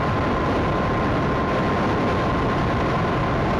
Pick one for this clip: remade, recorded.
recorded